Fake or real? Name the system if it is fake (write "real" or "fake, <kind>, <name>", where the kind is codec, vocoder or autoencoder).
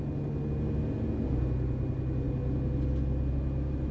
real